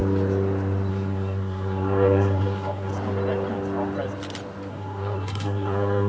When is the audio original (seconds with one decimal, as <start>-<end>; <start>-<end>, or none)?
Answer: 0.0-0.9; 2.9-4.7